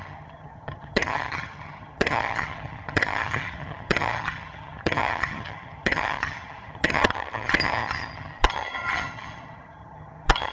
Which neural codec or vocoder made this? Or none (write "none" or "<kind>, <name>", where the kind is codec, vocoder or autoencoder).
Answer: vocoder, HiFi-GAN